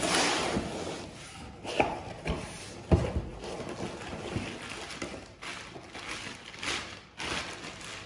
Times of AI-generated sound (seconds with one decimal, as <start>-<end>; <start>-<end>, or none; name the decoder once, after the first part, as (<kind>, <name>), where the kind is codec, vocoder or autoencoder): none